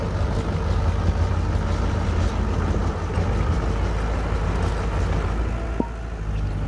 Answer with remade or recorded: recorded